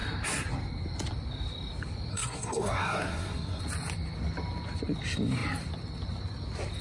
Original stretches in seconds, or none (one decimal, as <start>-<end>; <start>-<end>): 0.0-2.1; 3.6-6.8